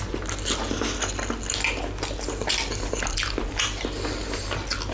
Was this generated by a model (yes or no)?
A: no